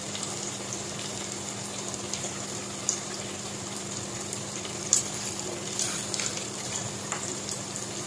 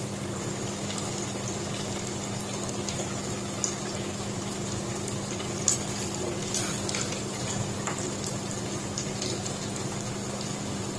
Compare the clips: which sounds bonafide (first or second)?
second